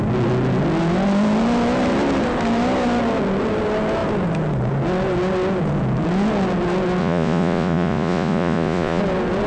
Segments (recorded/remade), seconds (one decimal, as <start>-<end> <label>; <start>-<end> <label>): 0.0-7.0 recorded; 7.0-9.0 remade; 9.0-9.5 recorded